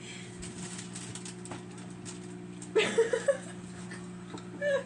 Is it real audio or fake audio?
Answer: real